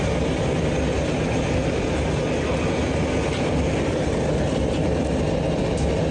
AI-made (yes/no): no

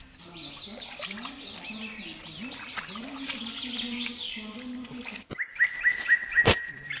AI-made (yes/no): no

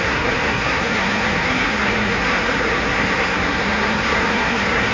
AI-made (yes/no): yes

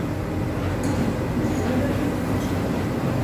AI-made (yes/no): no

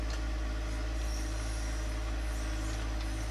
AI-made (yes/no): no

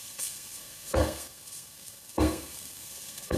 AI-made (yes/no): yes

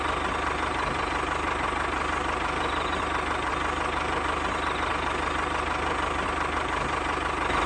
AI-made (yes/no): no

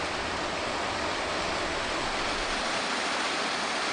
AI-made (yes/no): no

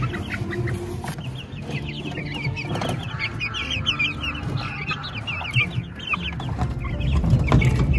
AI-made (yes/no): no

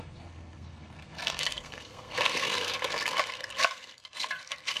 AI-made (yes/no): yes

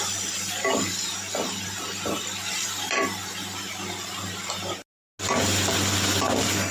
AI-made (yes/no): no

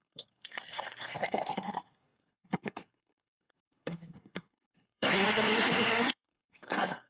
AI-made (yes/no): yes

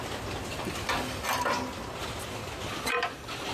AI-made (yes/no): no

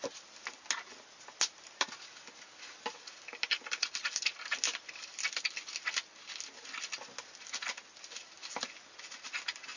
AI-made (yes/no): no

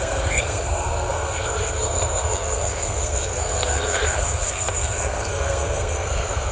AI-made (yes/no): yes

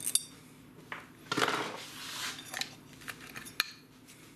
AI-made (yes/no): no